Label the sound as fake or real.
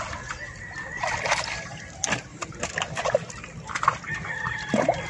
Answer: real